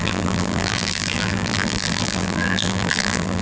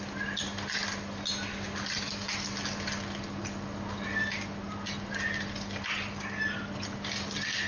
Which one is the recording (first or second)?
second